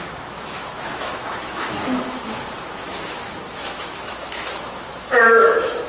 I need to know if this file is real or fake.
fake